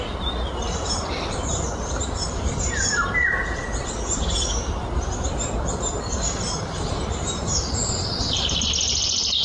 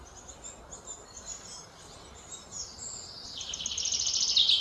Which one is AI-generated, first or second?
first